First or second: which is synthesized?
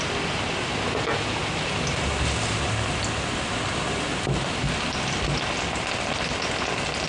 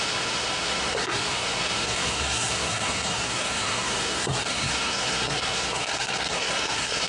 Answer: second